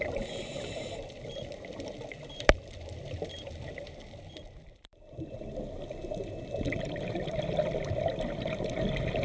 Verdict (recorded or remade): remade